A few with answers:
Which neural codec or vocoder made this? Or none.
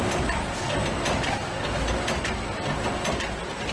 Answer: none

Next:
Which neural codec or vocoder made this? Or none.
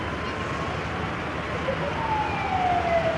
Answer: none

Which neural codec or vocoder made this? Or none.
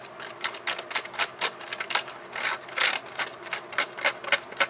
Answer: none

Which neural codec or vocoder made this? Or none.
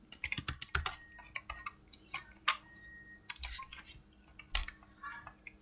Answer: none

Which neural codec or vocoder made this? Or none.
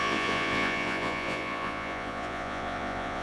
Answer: vocoder, Vocos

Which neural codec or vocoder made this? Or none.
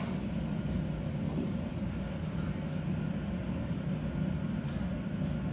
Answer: none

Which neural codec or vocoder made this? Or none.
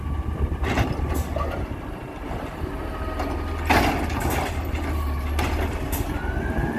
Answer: none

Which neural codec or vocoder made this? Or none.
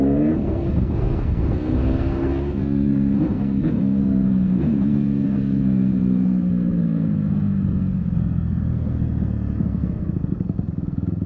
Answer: codec, SNAC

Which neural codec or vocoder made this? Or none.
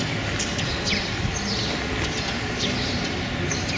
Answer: none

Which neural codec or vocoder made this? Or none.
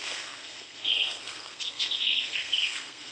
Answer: codec, SNAC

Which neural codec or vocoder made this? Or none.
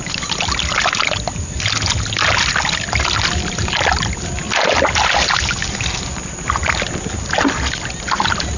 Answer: none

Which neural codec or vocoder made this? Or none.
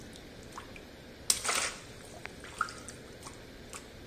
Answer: none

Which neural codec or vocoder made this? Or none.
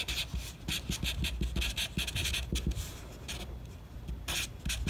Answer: none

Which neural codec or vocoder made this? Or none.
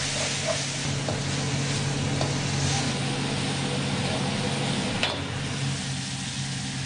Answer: none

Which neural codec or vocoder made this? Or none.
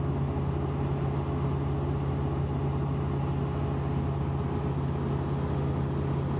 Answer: none